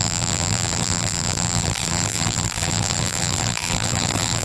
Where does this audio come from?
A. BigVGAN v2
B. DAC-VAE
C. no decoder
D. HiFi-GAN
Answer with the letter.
A